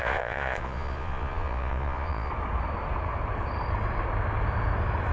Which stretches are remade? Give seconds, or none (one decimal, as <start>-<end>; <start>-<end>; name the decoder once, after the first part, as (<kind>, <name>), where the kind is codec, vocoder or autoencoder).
0.0-2.3 (vocoder, Vocos)

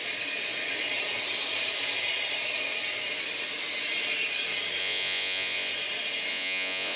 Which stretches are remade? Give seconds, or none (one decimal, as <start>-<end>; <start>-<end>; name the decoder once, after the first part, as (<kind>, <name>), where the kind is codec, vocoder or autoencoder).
4.8-5.7 (vocoder, Vocos); 6.3-7.0

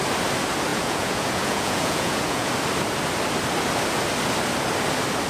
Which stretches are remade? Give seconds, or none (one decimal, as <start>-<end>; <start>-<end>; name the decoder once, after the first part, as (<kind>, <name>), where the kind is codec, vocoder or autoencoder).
0.7-2.5 (vocoder, Vocos)